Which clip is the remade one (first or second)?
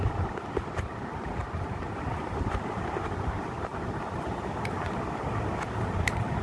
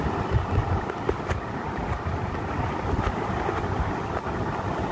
first